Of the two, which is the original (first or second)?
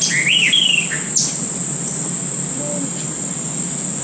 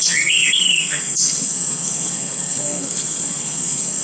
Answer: first